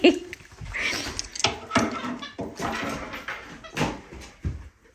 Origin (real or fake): real